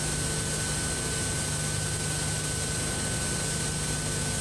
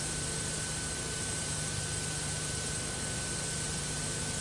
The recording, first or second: first